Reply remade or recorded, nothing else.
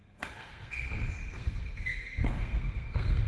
remade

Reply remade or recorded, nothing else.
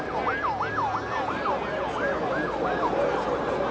recorded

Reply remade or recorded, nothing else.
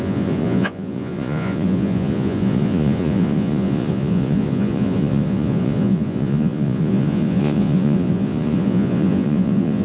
remade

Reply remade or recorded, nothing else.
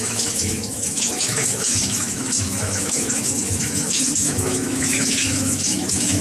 remade